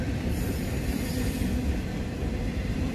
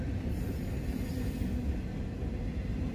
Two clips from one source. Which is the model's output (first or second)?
first